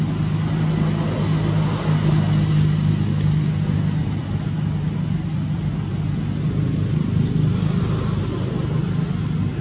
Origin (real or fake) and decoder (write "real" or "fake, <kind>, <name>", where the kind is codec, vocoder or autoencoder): real